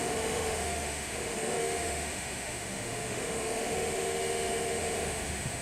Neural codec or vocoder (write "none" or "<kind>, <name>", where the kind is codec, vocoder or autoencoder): autoencoder, DAC-VAE